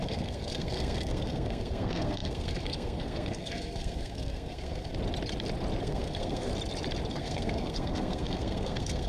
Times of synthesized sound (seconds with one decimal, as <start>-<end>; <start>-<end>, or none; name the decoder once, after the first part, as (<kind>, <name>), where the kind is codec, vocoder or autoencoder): 0.0-4.9 (codec, SNAC); 5.8-6.5; 7.1-9.1